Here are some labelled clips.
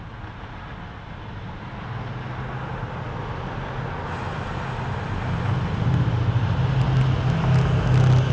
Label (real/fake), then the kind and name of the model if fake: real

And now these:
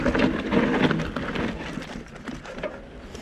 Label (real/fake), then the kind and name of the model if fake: real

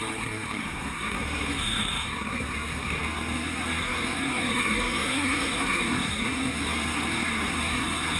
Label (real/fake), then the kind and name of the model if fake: fake, codec, SNAC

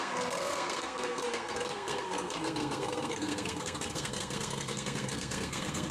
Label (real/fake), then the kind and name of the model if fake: fake, codec, SNAC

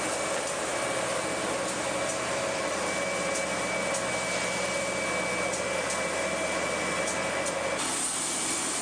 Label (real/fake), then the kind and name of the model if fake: real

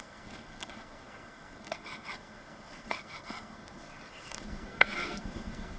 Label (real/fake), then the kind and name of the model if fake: fake, codec, SNAC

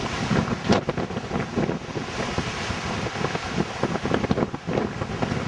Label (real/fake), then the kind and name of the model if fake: real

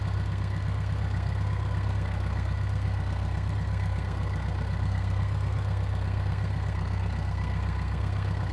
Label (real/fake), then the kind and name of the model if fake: fake, codec, SNAC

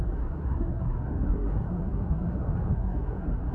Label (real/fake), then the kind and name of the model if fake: fake, codec, SNAC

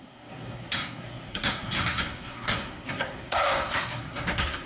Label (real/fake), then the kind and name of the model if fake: fake, codec, SNAC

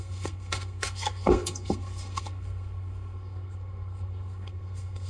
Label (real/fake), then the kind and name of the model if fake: fake, codec, SNAC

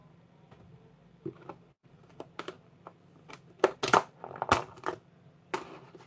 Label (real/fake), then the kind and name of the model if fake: real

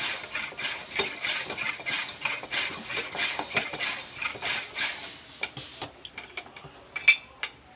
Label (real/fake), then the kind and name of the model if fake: real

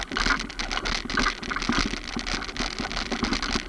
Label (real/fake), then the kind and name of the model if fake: real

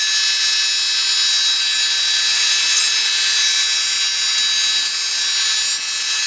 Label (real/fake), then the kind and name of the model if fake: real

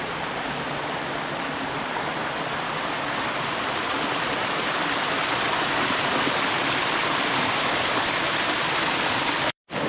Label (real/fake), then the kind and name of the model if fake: real